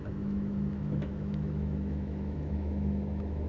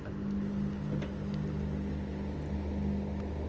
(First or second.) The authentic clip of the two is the second